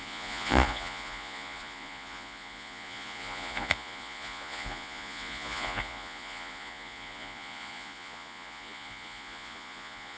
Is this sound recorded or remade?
remade